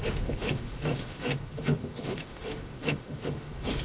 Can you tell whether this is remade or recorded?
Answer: remade